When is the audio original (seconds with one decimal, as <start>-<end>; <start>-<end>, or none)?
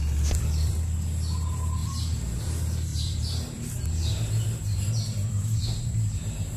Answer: 0.0-2.9